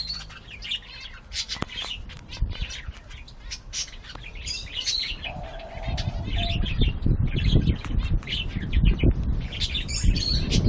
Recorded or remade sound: remade